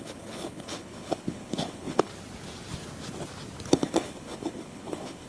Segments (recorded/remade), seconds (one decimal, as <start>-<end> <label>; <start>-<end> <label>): 0.0-2.1 remade; 2.1-3.7 recorded; 3.7-5.3 remade